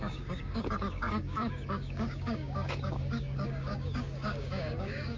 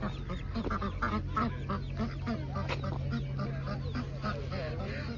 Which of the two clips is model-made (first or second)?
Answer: first